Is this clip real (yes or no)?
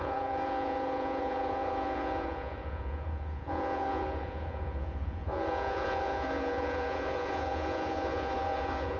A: no